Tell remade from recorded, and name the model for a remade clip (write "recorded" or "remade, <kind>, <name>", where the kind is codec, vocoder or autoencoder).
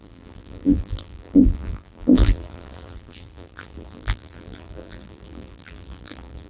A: remade, vocoder, BigVGAN v2